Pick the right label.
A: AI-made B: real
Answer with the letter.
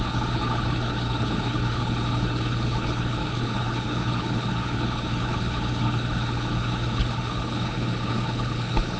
A